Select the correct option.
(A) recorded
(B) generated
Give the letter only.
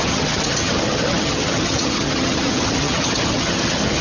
B